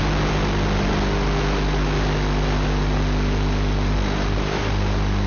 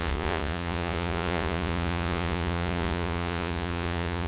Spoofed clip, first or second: second